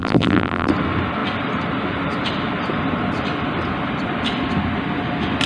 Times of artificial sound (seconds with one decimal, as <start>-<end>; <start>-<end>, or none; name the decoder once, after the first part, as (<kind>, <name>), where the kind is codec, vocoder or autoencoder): 0.0-0.7 (vocoder, BigVGAN v2)